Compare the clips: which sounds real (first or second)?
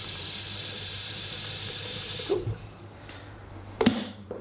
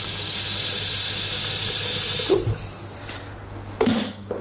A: second